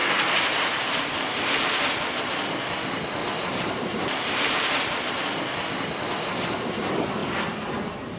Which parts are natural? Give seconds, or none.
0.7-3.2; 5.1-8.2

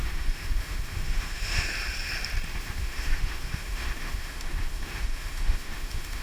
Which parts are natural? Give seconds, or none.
1.7-2.6